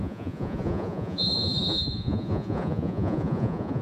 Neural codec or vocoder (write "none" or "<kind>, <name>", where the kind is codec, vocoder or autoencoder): vocoder, Vocos